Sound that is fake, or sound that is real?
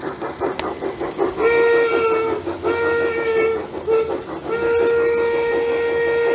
real